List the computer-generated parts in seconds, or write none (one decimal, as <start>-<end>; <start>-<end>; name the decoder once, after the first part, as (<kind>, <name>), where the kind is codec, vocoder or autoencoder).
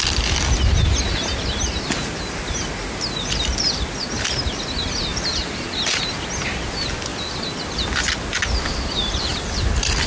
5.1-6.0 (vocoder, BigVGAN v2); 7.1-8.1; 9.3-10.1